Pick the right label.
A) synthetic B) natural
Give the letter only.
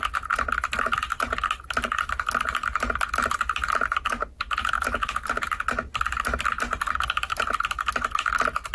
B